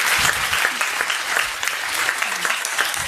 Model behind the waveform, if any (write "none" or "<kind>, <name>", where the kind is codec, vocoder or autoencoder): vocoder, BigVGAN v2